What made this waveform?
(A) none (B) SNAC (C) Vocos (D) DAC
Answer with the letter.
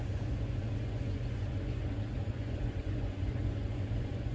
C